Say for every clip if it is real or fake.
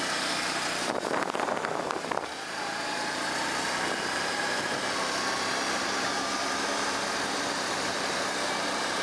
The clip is real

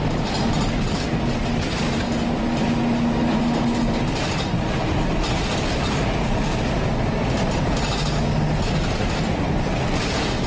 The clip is real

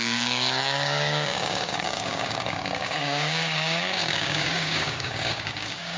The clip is fake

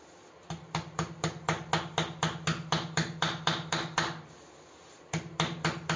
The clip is real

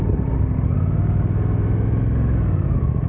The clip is real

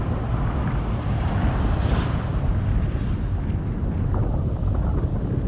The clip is real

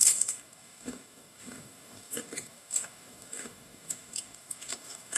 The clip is fake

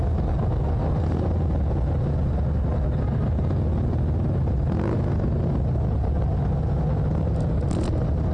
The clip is real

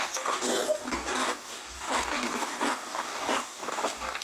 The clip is fake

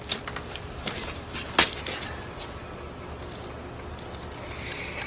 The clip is real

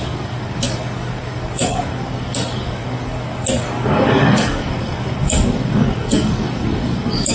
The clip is fake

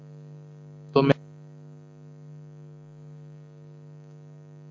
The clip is fake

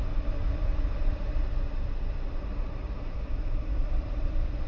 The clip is real